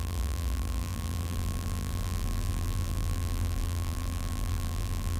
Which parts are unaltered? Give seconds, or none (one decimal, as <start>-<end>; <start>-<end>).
none

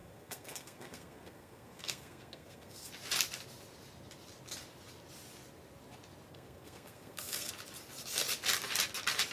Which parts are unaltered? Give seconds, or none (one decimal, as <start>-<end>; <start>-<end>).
2.9-6.3; 7.5-9.3

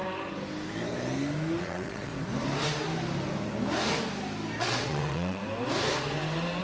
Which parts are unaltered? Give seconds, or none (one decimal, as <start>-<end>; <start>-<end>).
0.0-1.6; 2.1-4.6; 5.4-6.6

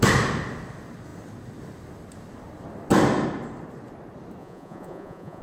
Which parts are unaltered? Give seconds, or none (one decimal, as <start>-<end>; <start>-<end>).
0.0-4.4

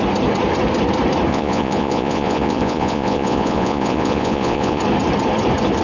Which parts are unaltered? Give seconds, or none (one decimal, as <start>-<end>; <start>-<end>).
0.0-1.3; 4.8-5.8

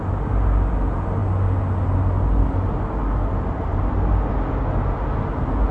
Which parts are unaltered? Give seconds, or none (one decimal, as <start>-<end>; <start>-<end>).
0.0-5.7

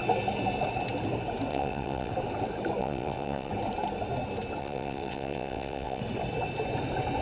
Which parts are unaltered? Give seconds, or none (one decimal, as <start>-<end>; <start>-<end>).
0.0-1.5; 2.1-2.8; 3.5-4.6; 6.0-7.2